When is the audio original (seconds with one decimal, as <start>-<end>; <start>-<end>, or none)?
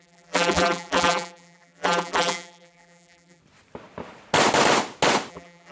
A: 3.4-5.3